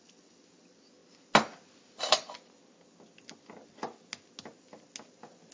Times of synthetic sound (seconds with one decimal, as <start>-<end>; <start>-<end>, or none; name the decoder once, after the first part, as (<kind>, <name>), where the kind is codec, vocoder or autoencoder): none

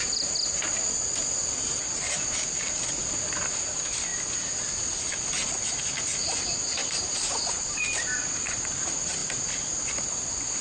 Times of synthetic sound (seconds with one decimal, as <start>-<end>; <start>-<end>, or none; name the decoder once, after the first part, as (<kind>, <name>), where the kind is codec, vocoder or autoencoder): 6.8-7.8 (vocoder, BigVGAN v2)

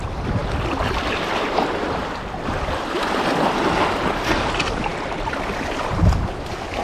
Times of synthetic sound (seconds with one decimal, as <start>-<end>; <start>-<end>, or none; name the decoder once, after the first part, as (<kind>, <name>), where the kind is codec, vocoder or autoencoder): none

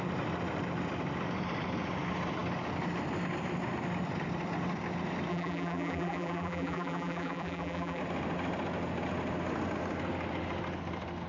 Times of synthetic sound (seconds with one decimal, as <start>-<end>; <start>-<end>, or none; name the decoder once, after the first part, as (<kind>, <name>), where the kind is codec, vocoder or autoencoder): 5.3-8.0 (vocoder, BigVGAN v2)

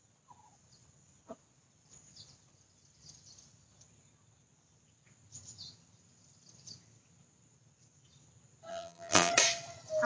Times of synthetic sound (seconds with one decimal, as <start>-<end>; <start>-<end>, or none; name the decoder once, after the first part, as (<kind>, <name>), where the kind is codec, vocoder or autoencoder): 8.7-9.3 (vocoder, BigVGAN v2)